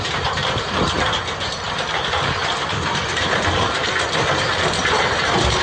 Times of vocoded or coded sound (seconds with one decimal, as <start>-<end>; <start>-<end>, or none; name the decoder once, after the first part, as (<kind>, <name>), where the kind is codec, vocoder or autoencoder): none